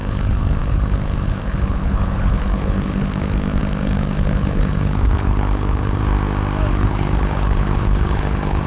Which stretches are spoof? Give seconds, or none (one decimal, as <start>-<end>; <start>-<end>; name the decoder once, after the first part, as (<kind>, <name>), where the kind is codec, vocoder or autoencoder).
0.0-6.0 (codec, HILCodec); 6.7-8.7